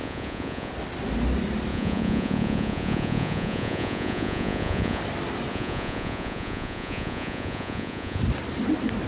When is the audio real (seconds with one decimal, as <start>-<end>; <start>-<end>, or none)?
0.7-1.7; 5.0-5.5; 8.2-9.1